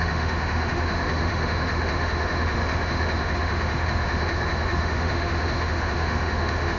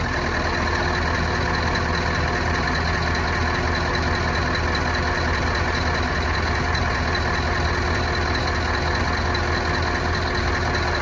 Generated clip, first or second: first